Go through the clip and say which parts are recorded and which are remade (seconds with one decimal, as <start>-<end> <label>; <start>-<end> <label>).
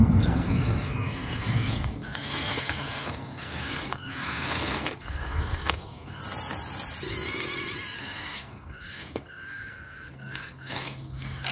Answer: 0.0-6.2 remade; 6.2-8.0 recorded; 8.0-11.5 remade